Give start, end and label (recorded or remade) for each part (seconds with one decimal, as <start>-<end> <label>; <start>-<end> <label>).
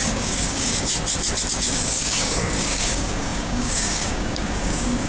0.0-0.9 remade; 0.9-1.5 recorded; 1.5-5.1 remade